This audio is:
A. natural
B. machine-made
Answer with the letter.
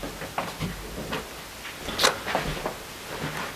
A